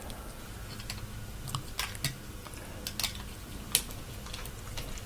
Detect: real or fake real